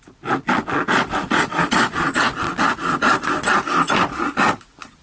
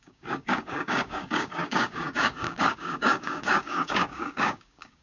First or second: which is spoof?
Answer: second